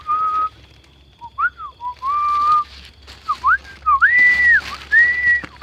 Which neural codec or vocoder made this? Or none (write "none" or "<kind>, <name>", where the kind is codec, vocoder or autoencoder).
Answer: none